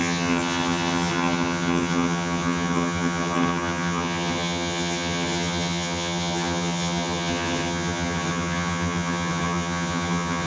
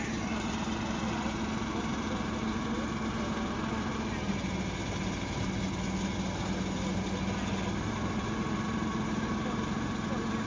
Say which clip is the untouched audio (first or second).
second